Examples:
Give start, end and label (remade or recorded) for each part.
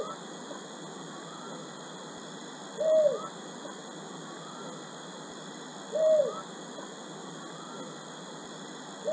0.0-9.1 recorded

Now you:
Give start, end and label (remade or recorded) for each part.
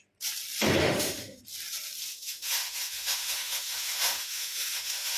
0.0-0.8 recorded; 0.8-1.4 remade; 1.4-2.1 recorded; 2.1-5.2 remade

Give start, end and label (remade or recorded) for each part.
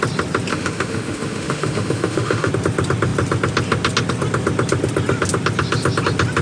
0.0-0.5 recorded; 0.5-2.5 remade; 2.5-6.4 recorded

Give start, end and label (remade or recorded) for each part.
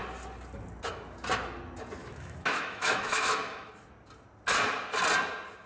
0.0-2.0 recorded; 2.0-3.7 remade; 3.7-5.7 recorded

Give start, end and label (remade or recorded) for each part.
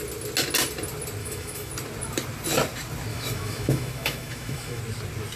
0.0-1.2 recorded; 1.2-1.7 remade; 1.7-3.1 recorded; 3.1-4.8 remade; 4.8-5.4 recorded